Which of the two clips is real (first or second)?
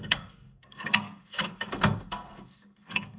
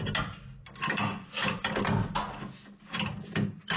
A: second